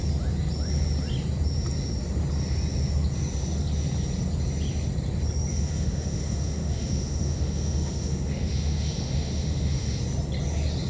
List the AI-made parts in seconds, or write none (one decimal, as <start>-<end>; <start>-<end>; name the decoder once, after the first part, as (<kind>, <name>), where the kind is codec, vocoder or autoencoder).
5.5-10.0 (autoencoder, DAC-VAE)